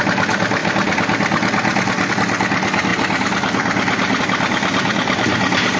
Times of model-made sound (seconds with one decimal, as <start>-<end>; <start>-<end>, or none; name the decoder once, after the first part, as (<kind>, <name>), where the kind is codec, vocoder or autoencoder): none